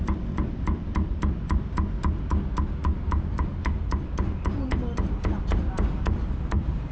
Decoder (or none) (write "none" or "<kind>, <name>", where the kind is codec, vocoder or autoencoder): none